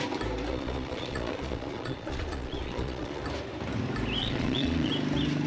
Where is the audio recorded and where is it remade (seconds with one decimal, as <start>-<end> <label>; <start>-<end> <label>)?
0.0-0.5 recorded; 0.5-3.2 remade; 3.2-4.2 recorded; 4.2-4.9 remade; 4.9-5.5 recorded